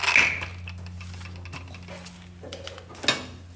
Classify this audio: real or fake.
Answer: real